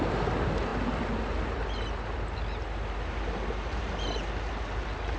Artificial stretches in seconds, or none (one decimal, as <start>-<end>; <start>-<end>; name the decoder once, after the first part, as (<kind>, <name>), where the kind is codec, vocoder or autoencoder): none